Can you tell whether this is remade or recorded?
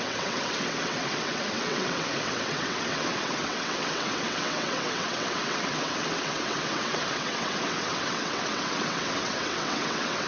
remade